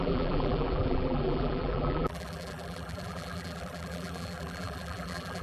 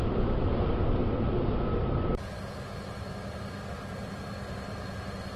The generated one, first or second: first